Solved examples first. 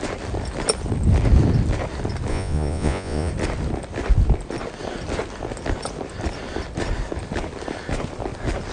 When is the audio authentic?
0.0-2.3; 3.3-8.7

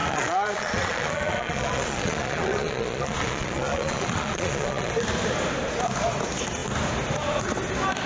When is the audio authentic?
4.9-8.1

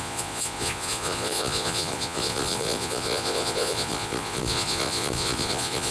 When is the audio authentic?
none

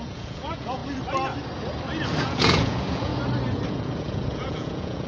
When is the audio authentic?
0.8-2.2; 3.1-3.7

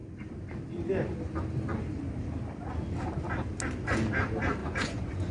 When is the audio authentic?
0.0-4.6

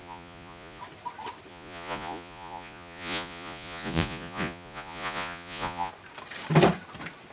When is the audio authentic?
0.8-1.5; 5.9-7.3

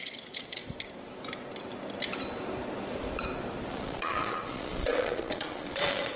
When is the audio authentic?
0.6-3.7